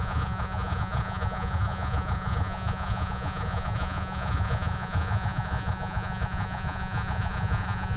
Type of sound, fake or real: fake